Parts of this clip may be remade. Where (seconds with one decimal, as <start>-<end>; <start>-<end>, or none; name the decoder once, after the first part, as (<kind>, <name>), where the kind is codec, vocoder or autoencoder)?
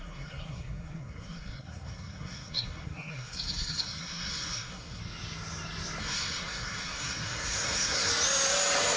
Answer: 0.0-5.0 (codec, SNAC); 6.0-8.1